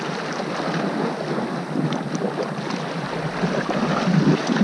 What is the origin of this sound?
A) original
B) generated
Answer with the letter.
A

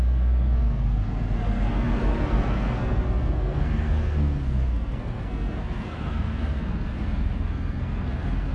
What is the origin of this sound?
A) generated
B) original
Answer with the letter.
A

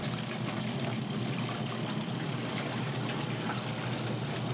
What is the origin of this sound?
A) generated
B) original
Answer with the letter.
B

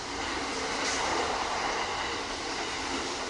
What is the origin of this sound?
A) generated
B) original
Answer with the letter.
B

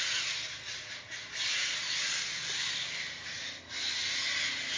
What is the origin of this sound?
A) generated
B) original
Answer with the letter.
B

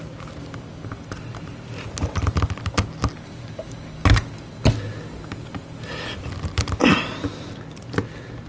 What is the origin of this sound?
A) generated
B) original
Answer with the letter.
B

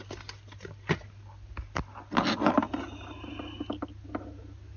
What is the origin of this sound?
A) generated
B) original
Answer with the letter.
B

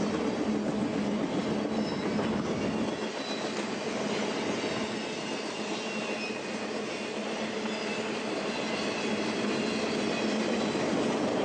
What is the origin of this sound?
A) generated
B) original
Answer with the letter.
B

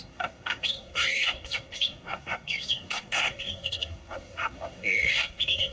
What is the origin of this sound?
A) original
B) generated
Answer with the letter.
B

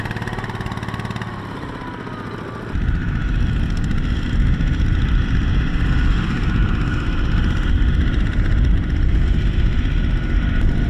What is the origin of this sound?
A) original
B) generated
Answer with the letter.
A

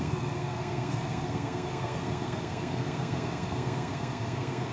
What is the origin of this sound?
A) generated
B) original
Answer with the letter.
A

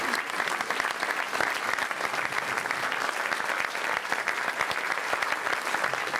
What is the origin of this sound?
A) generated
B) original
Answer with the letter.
B